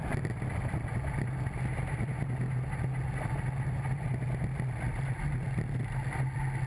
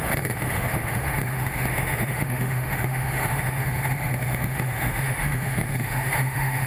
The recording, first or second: first